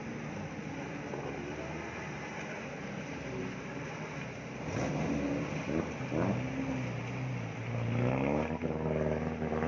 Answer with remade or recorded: recorded